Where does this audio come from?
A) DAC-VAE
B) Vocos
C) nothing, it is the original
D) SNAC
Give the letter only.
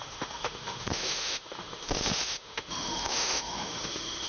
A